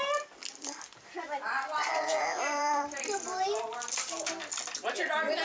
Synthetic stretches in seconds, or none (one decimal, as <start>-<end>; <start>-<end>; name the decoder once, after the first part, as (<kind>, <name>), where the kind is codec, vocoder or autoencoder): 1.7-4.4 (vocoder, BigVGAN v2)

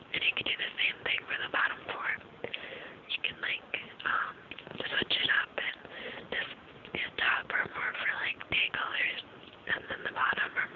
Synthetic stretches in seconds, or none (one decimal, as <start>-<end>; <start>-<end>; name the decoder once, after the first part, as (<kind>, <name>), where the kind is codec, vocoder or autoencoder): 4.7-5.3 (vocoder, BigVGAN v2)

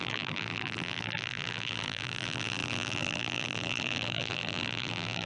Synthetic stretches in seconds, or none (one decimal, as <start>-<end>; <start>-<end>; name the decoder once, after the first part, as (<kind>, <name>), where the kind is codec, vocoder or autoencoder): 0.0-5.3 (vocoder, BigVGAN v2)

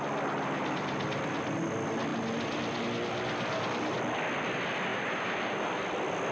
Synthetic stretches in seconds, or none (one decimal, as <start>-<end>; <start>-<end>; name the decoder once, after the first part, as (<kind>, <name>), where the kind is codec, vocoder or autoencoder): 4.9-5.8 (vocoder, BigVGAN v2)

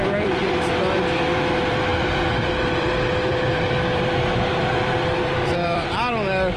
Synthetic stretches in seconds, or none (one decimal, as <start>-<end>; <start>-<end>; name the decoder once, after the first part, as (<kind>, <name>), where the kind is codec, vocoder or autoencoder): 0.0-6.6 (vocoder, BigVGAN v2)